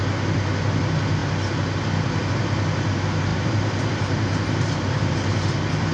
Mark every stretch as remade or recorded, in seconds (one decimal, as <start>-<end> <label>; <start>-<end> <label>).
0.0-3.3 recorded; 3.3-5.1 remade; 5.1-5.9 recorded